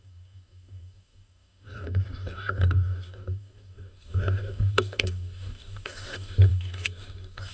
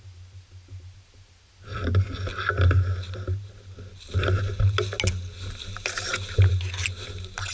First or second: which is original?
second